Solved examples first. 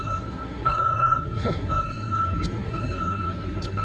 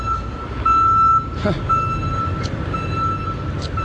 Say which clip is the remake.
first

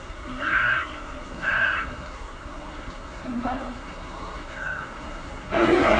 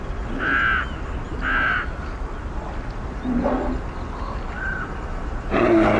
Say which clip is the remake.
first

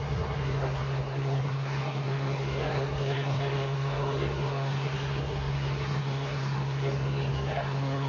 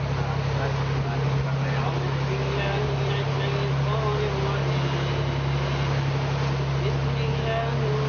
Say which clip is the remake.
first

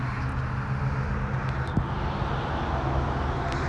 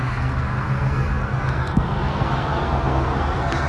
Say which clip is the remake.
second